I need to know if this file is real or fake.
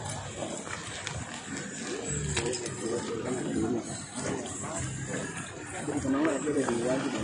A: real